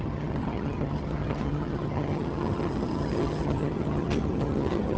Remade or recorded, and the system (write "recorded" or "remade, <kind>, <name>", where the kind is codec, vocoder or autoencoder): remade, vocoder, HiFi-GAN